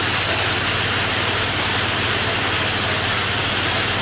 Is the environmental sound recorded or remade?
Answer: recorded